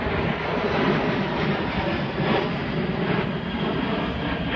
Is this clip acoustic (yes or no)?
yes